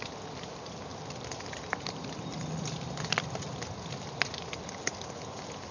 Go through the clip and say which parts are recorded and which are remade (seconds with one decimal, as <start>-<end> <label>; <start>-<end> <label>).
0.0-5.7 recorded